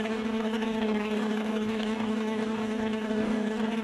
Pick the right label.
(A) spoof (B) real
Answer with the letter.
A